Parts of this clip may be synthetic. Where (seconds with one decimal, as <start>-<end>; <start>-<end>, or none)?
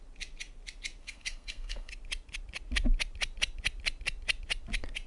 1.0-1.9